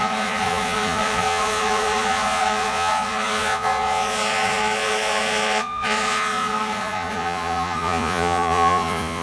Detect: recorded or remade remade